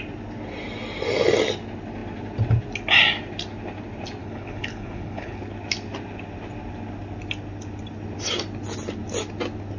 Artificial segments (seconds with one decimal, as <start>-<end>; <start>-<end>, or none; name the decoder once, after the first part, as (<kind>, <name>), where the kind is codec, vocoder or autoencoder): 4.2-5.4 (codec, HILCodec)